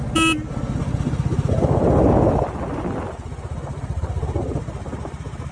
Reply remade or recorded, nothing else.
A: recorded